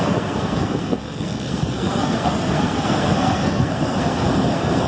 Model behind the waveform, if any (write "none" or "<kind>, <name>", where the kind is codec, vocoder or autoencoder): codec, SNAC